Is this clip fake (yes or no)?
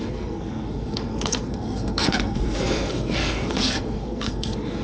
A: yes